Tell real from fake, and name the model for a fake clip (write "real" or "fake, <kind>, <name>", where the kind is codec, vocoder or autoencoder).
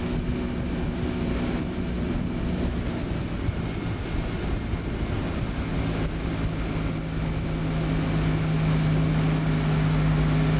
real